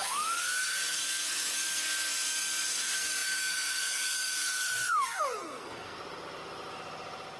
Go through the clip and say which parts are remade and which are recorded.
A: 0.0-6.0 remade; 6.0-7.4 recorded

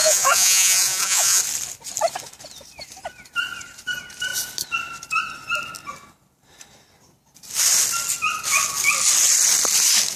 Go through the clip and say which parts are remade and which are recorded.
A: 0.0-1.4 remade; 1.4-10.2 recorded

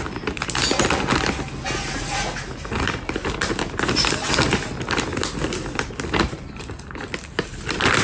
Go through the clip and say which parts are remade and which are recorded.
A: 0.0-8.0 recorded

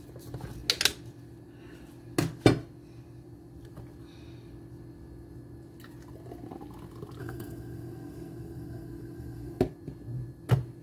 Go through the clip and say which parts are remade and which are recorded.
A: 0.0-7.2 recorded; 7.2-9.6 remade; 9.6-10.8 recorded

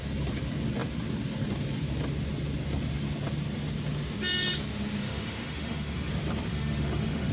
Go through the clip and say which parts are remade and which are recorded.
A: 0.0-5.0 recorded; 5.0-6.1 remade; 6.1-6.5 recorded; 6.5-7.3 remade

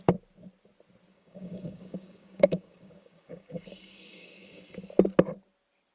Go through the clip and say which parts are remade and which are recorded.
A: 0.0-1.1 recorded; 1.1-4.6 remade; 4.6-5.9 recorded